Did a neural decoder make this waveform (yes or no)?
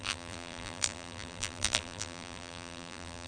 yes